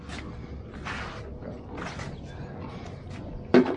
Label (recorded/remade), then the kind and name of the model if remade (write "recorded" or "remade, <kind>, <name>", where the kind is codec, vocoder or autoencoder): recorded